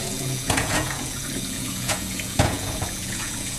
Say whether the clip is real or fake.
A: fake